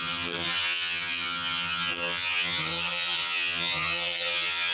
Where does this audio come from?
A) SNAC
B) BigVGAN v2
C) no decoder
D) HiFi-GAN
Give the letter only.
D